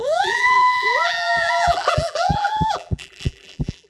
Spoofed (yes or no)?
yes